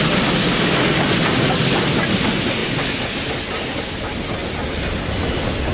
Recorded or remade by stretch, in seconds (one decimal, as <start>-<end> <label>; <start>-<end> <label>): 0.0-5.7 recorded